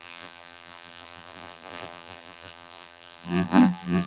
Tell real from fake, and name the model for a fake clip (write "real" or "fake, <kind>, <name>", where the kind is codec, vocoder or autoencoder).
fake, vocoder, BigVGAN v2